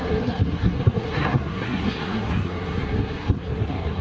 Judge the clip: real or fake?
fake